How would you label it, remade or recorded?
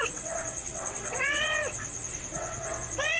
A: remade